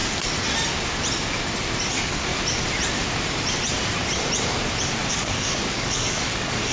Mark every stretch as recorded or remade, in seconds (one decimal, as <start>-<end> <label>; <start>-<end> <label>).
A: 0.0-1.9 recorded; 1.9-2.3 remade; 2.3-5.1 recorded; 5.1-6.7 remade